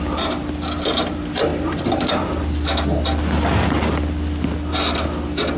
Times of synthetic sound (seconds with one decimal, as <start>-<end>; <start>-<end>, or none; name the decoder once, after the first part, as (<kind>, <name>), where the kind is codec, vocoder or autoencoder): none